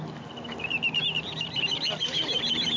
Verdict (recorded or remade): recorded